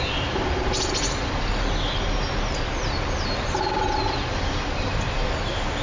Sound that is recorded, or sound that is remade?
recorded